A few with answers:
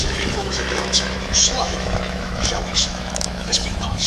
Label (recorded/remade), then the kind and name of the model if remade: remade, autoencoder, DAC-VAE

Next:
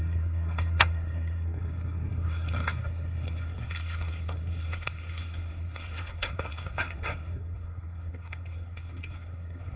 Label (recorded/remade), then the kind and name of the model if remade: remade, codec, SNAC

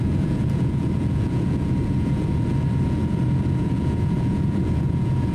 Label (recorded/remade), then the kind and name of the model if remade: remade, vocoder, Vocos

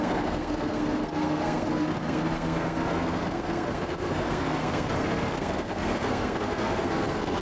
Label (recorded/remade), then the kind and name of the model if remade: remade, codec, SNAC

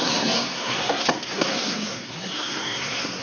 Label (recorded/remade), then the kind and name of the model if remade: remade, codec, SNAC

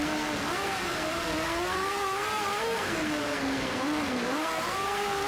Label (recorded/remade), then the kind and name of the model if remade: remade, codec, SNAC